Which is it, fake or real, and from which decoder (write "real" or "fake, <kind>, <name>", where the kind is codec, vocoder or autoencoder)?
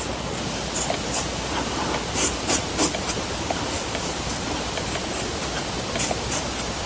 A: real